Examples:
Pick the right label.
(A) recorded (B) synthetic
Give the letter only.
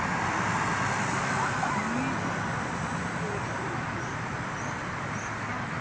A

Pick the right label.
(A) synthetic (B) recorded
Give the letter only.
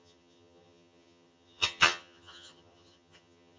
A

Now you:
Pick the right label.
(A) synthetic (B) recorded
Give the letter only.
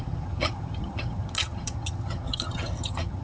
A